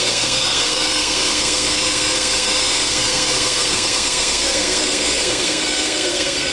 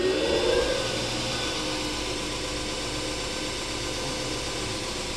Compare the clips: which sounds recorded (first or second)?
second